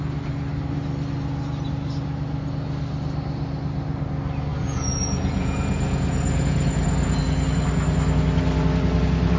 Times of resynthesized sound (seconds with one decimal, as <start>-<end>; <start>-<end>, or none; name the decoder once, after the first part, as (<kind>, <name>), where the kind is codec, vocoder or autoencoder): 4.5-7.2 (vocoder, Vocos)

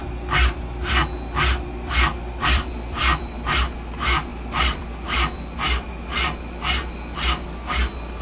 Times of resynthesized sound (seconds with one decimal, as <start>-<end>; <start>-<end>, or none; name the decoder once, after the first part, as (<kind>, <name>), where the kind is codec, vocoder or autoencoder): 2.1-3.3 (vocoder, BigVGAN v2); 4.3-5.9